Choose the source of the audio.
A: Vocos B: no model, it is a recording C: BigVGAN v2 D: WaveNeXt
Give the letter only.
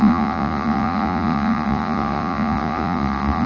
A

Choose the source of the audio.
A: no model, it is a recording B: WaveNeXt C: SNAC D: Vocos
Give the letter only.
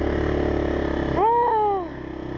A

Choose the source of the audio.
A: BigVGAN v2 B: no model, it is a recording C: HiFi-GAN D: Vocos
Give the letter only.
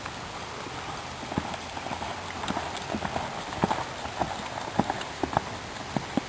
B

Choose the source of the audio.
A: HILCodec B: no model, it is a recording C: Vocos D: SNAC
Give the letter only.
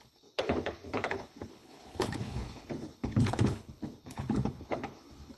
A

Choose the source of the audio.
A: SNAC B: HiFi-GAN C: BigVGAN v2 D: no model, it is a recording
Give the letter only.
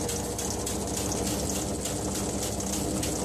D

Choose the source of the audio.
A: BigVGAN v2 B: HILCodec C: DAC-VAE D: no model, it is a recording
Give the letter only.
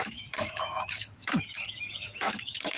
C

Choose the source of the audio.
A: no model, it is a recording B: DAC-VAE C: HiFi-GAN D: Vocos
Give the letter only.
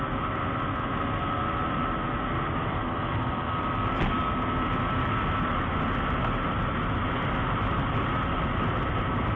A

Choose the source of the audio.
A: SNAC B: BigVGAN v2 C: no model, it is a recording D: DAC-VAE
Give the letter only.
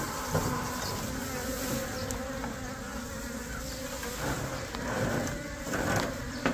C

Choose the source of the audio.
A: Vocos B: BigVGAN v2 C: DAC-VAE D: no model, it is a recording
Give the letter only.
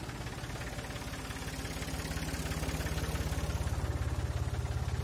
D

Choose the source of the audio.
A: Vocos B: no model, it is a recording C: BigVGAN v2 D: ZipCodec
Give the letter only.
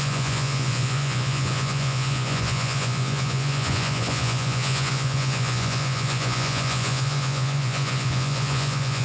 A